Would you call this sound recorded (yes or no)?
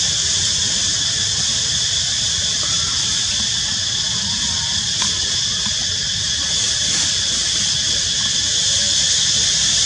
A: yes